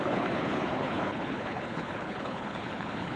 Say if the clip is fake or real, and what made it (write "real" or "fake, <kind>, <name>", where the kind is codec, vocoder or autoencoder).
fake, codec, HILCodec